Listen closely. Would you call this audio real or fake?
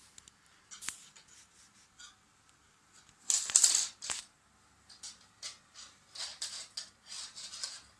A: real